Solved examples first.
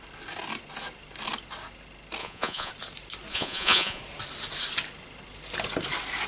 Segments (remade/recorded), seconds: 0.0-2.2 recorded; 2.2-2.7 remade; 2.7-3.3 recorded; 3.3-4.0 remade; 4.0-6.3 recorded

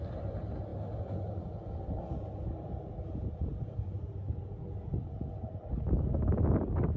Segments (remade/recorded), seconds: 0.0-7.0 recorded

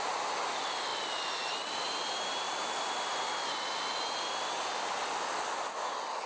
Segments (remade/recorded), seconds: 0.0-6.3 recorded

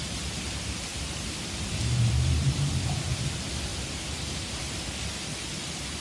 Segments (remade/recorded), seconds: 0.0-0.9 recorded; 0.9-3.2 remade; 3.2-3.7 recorded; 3.7-4.8 remade; 4.8-6.0 recorded

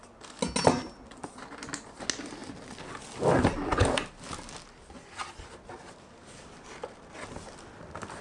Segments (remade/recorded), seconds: 0.0-8.2 recorded

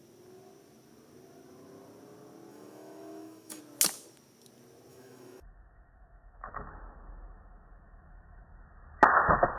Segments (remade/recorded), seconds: 0.0-2.5 recorded; 2.5-3.6 remade; 3.6-4.9 recorded; 4.9-8.4 remade; 8.4-9.6 recorded

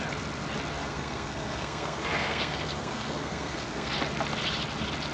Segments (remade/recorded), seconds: 0.0-0.8 recorded; 0.8-3.9 remade; 3.9-5.1 recorded

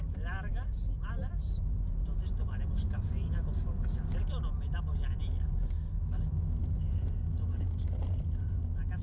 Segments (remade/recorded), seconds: 0.0-9.0 recorded